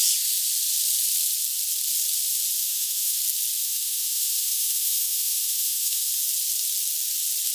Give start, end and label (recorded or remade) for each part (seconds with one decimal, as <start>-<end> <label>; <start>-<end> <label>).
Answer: 0.0-2.6 recorded; 2.6-3.2 remade; 3.2-3.6 recorded; 3.6-6.1 remade; 6.1-7.5 recorded